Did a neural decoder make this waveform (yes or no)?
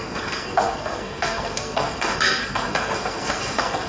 yes